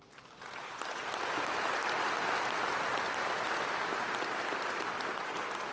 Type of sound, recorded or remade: recorded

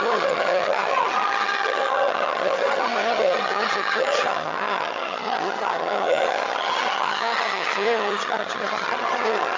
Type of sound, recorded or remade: remade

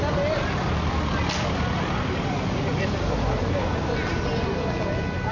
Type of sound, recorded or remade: recorded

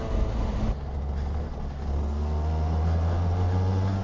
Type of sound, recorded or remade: recorded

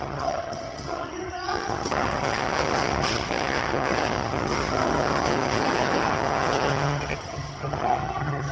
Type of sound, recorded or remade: remade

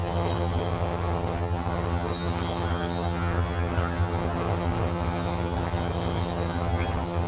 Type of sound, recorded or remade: remade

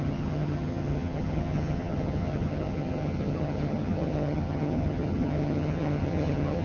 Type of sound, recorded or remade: remade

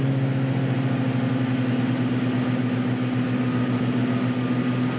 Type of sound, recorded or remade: recorded